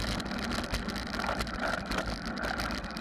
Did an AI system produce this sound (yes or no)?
no